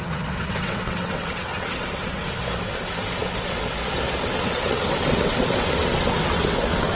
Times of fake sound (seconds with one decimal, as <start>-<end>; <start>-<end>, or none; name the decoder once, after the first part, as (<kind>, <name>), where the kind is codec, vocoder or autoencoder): 0.0-2.2 (vocoder, WaveNeXt); 4.2-7.0